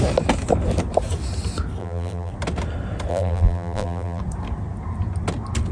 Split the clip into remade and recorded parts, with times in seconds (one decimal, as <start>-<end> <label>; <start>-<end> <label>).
0.0-1.8 recorded; 1.8-2.3 remade; 2.3-3.1 recorded; 3.1-4.2 remade; 4.2-5.7 recorded